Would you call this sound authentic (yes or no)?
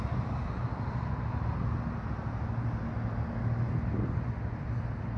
yes